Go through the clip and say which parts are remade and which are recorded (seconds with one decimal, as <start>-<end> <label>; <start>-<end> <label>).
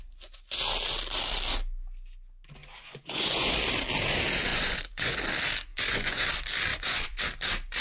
0.0-2.6 recorded; 2.6-3.5 remade; 3.5-4.5 recorded; 4.5-5.2 remade; 5.2-5.7 recorded; 5.7-6.3 remade; 6.3-6.7 recorded; 6.7-7.2 remade; 7.2-7.8 recorded